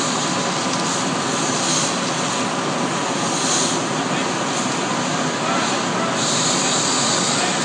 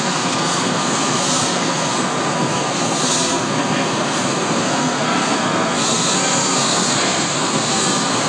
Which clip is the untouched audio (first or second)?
first